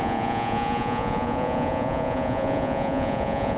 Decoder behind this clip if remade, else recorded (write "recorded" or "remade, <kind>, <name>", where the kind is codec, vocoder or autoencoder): remade, vocoder, Vocos